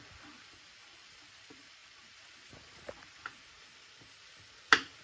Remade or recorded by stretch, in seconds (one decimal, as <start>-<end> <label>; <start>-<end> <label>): 0.0-5.0 recorded

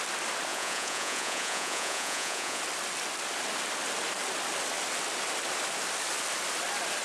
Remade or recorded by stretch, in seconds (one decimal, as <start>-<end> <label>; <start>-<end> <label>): 0.0-0.5 recorded; 0.5-2.6 remade; 2.6-7.0 recorded

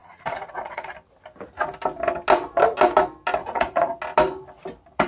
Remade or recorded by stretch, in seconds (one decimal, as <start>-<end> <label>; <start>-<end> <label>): 0.0-0.9 remade; 0.9-3.4 recorded; 3.4-3.9 remade; 3.9-5.1 recorded

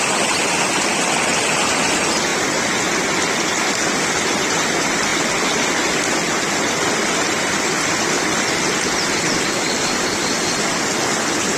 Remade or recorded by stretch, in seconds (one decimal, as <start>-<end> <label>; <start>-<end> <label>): 0.0-11.6 recorded

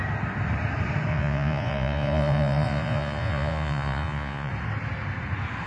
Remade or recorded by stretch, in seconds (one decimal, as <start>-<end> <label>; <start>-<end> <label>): 0.0-1.1 recorded; 1.1-4.5 remade; 4.5-5.7 recorded

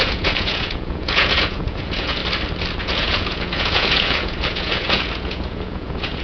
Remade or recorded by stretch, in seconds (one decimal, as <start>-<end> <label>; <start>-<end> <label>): 0.0-2.2 remade; 2.2-2.8 recorded; 2.8-6.2 remade

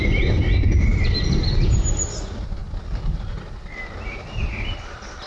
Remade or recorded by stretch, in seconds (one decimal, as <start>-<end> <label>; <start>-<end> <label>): 0.0-5.3 recorded